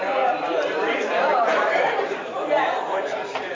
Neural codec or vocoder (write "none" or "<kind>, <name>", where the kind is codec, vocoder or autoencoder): vocoder, BigVGAN v2